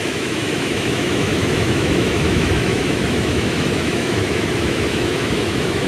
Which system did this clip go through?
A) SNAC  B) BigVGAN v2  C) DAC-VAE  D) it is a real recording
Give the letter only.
C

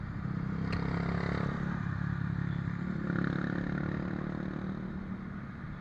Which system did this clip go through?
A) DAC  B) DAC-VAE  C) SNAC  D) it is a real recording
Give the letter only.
D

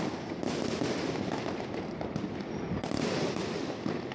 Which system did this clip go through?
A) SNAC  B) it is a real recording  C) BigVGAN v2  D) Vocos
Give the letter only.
B